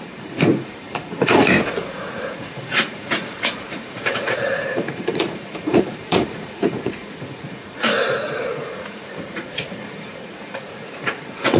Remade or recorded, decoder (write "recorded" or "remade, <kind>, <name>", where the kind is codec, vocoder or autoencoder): remade, vocoder, Vocos